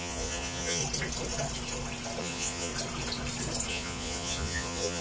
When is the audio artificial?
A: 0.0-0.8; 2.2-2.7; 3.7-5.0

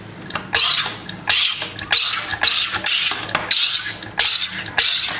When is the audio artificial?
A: 1.0-1.9

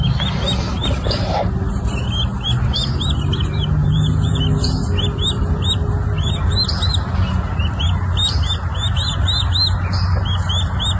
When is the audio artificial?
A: 3.8-4.4

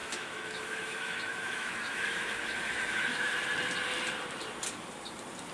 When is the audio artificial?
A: 0.0-3.3

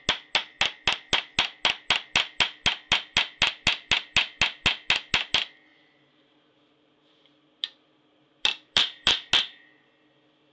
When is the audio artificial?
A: 5.7-9.3

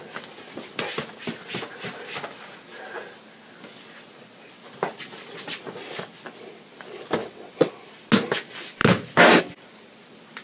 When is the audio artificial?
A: 7.2-7.7

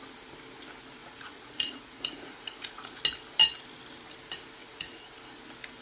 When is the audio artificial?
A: 1.0-3.0; 4.6-5.1

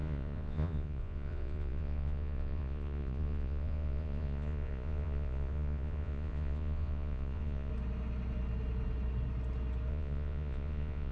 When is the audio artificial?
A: 0.0-7.7; 9.9-11.1